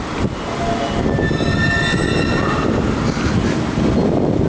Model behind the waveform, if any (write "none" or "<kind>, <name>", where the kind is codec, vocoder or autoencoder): none